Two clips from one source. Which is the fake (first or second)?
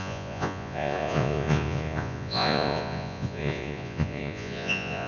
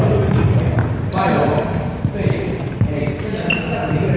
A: first